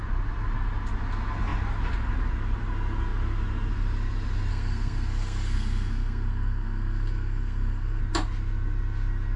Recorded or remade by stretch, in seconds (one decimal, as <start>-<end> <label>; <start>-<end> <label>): 0.0-4.5 recorded; 4.5-8.0 remade; 8.0-9.4 recorded